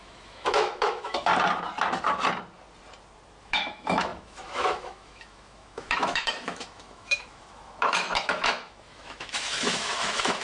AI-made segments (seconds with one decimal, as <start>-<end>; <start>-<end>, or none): 0.0-1.3; 3.4-10.4